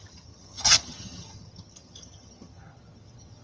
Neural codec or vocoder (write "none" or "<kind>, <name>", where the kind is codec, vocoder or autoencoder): vocoder, HiFi-GAN